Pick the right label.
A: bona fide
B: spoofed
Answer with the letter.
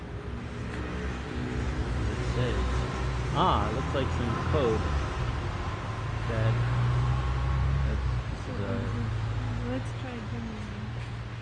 A